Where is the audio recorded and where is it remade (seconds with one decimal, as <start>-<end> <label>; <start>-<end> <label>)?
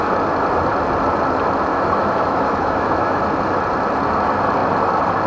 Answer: 0.0-1.7 recorded; 1.7-3.2 remade; 3.2-5.3 recorded